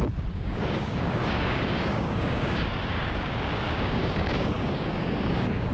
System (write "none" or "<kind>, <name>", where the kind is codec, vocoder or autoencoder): codec, DAC